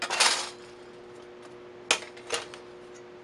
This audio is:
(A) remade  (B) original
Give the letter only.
B